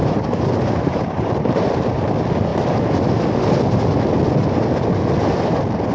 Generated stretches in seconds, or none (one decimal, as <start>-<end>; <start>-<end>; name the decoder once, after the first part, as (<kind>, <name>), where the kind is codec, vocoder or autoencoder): 0.0-2.0 (vocoder, BigVGAN v2)